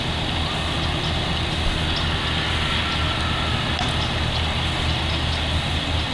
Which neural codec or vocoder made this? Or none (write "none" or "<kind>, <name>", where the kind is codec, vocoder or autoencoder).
none